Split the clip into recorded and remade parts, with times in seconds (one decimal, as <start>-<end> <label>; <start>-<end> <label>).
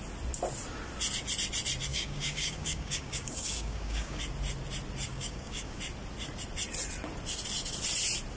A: 0.0-1.9 recorded; 1.9-4.2 remade; 4.2-5.1 recorded; 5.1-5.8 remade; 5.8-8.4 recorded